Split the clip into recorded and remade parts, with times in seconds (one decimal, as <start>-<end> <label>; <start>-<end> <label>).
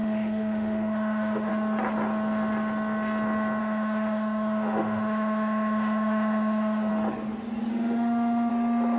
0.0-1.5 remade; 1.5-3.6 recorded; 3.6-6.9 remade; 6.9-7.7 recorded; 7.7-8.5 remade; 8.5-9.0 recorded